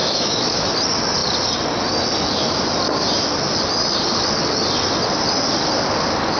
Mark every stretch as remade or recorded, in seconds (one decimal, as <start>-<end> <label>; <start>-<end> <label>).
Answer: 0.0-0.7 remade; 0.7-6.4 recorded